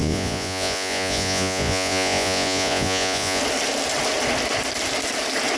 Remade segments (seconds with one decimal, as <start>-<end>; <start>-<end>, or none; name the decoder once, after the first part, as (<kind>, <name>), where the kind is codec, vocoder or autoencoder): 0.0-3.4 (vocoder, Vocos)